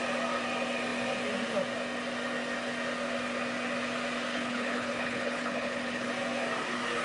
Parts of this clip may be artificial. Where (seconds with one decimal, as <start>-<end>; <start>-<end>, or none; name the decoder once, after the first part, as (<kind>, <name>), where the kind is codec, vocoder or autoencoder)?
4.3-6.1 (codec, HILCodec)